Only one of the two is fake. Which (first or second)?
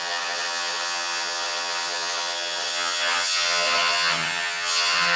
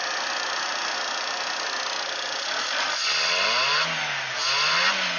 first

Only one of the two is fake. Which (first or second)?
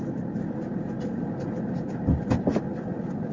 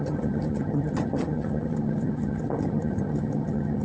second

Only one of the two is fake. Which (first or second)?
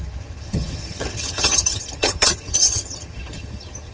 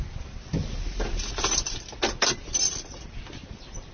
first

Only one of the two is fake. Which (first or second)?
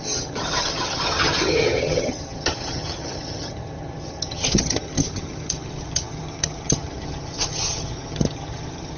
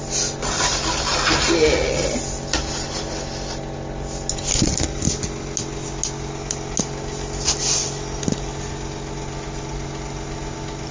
first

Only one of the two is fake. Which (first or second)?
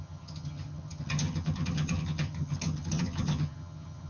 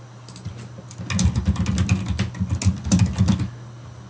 first